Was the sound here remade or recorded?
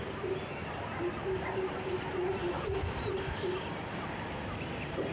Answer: recorded